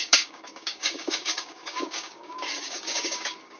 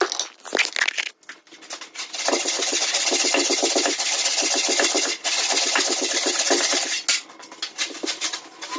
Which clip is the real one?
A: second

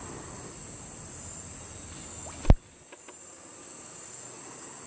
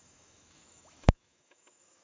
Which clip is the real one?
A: first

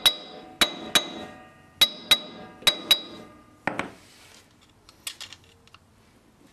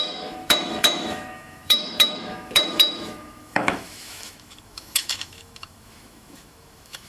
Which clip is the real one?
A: first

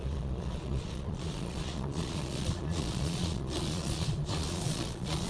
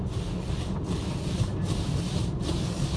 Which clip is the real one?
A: second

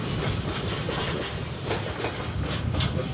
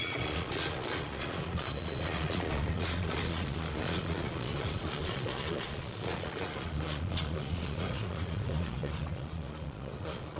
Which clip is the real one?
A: first